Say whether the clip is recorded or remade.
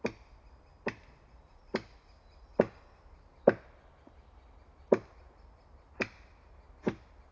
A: recorded